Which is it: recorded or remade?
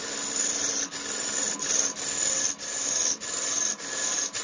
recorded